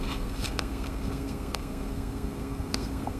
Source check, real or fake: fake